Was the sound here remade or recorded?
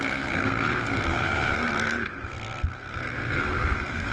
remade